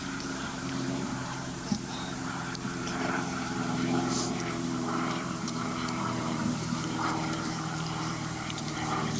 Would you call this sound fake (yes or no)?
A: yes